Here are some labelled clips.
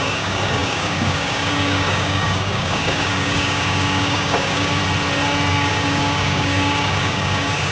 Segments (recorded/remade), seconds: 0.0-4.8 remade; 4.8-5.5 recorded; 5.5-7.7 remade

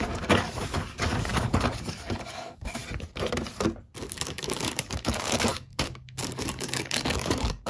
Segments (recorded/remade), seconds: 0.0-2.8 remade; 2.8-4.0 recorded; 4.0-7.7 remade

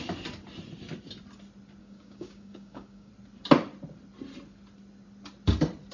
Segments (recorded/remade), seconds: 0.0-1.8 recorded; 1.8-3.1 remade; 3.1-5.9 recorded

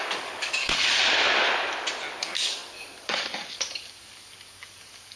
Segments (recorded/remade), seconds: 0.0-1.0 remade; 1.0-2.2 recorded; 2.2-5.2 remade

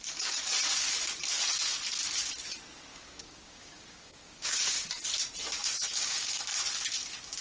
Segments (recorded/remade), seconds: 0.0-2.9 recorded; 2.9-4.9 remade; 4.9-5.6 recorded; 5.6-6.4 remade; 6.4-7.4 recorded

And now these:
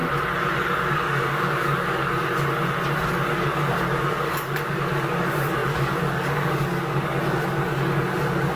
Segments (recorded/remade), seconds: 0.0-0.6 recorded; 0.6-2.3 remade; 2.3-3.1 recorded; 3.1-8.6 remade

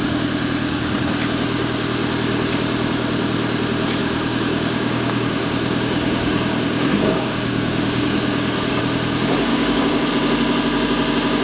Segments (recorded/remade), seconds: 0.0-4.0 recorded; 4.0-8.8 remade; 8.8-9.5 recorded; 9.5-10.1 remade; 10.1-11.4 recorded